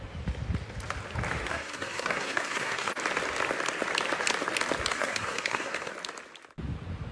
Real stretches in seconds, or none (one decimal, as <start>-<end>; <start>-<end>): 0.0-1.5; 2.9-4.9; 5.9-7.1